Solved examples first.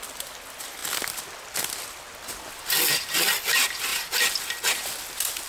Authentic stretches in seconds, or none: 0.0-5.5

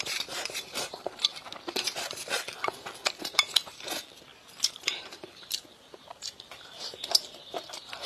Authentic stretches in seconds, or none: 1.3-3.2

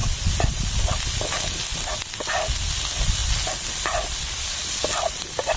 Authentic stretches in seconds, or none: 0.8-5.6

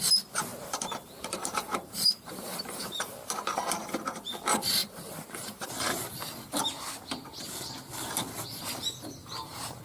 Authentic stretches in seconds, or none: 0.0-0.5; 3.0-4.8; 5.7-9.2

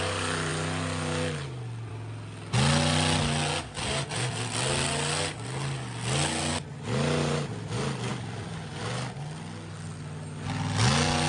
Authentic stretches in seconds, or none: 0.0-8.1; 8.7-11.3